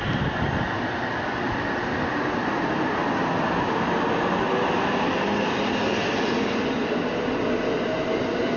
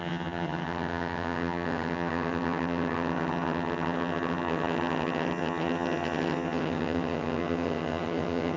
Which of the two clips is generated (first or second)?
second